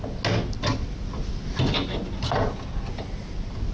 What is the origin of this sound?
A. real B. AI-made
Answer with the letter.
A